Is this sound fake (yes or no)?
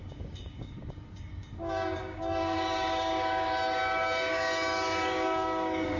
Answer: yes